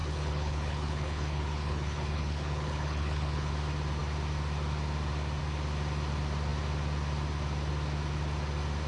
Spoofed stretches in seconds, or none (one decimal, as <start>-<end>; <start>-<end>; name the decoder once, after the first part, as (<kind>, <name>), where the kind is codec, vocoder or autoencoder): 0.0-3.5 (codec, HILCodec)